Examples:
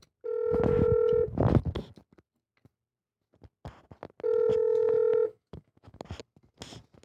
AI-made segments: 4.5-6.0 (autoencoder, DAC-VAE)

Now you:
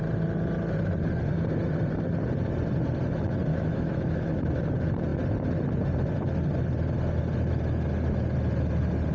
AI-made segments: 3.5-4.4 (autoencoder, DAC-VAE)

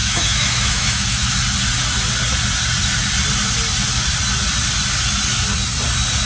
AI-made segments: 0.0-1.3 (autoencoder, DAC-VAE)